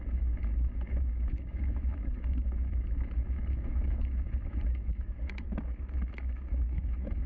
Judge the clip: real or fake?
fake